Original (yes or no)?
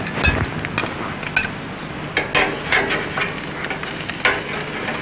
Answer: yes